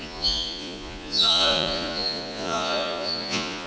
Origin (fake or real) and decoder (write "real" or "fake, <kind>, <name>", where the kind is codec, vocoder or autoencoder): fake, vocoder, Vocos